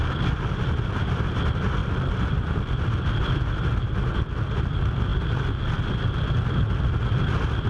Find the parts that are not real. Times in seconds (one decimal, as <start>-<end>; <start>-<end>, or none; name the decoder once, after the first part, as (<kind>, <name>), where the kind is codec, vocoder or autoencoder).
none